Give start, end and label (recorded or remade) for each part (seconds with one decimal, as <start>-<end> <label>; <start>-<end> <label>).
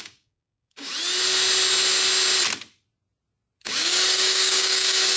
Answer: 0.0-0.9 remade; 0.9-3.6 recorded; 3.6-5.2 remade